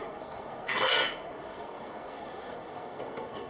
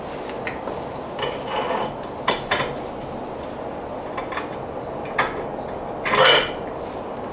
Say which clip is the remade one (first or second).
first